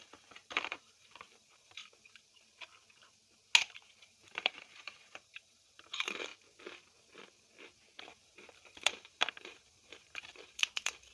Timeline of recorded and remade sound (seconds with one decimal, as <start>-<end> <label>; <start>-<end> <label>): 0.0-1.8 remade; 1.8-4.0 recorded; 4.0-6.3 remade; 6.3-8.0 recorded; 8.0-11.1 remade